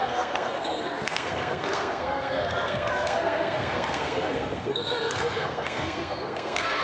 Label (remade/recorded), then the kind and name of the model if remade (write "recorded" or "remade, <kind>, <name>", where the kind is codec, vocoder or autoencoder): remade, codec, SNAC